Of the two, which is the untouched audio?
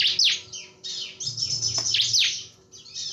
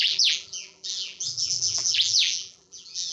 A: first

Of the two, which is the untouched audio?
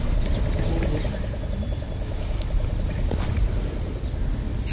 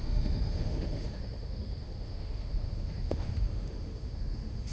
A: first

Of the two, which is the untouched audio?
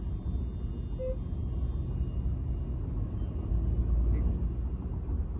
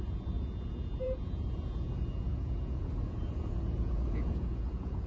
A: first